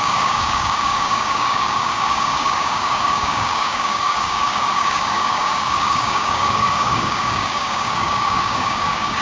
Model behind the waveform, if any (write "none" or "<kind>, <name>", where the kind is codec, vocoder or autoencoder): codec, DAC